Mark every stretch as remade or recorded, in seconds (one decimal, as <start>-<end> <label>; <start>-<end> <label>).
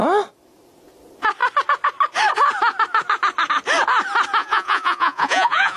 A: 0.0-4.4 recorded; 4.4-5.8 remade